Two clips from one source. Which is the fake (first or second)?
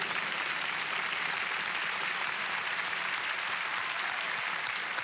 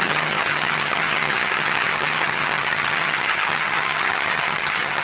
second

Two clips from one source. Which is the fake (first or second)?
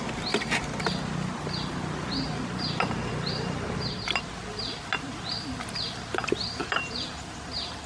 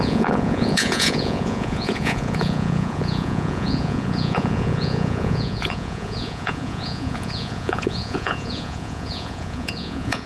second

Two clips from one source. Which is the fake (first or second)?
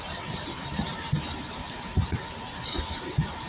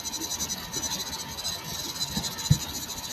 first